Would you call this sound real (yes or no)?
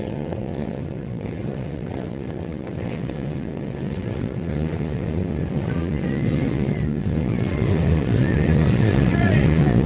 no